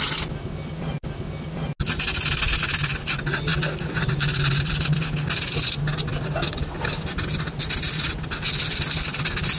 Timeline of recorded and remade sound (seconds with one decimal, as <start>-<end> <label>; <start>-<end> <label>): 0.0-9.6 recorded

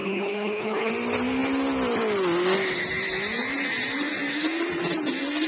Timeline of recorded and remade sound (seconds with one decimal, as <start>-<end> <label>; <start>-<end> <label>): 0.0-0.9 remade; 0.9-5.5 recorded

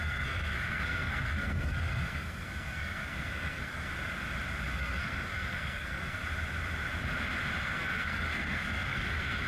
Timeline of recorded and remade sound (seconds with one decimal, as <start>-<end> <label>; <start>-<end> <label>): 0.0-3.9 remade; 3.9-4.7 recorded; 4.7-6.2 remade; 6.2-7.6 recorded; 7.6-9.5 remade

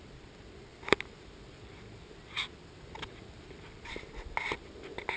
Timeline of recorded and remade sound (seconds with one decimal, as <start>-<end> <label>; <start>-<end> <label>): 0.0-5.2 recorded

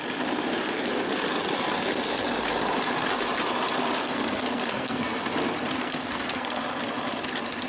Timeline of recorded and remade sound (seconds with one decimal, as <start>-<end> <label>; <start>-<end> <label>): 0.0-4.0 recorded; 4.0-5.2 remade; 5.2-5.8 recorded; 5.8-6.6 remade; 6.6-7.7 recorded

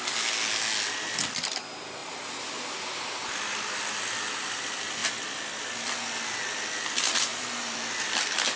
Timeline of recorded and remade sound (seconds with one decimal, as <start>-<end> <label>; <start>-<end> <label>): 0.0-7.3 recorded; 7.3-8.1 remade; 8.1-8.6 recorded